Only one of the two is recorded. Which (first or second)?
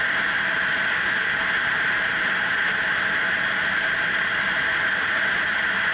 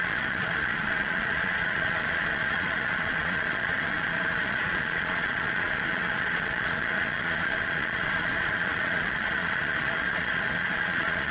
first